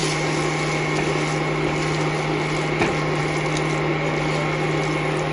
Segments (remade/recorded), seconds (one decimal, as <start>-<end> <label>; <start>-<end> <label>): 0.0-5.3 recorded